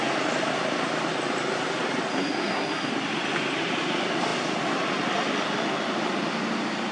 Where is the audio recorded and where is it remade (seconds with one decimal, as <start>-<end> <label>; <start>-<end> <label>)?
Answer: 0.0-2.1 recorded; 2.1-2.9 remade; 2.9-6.9 recorded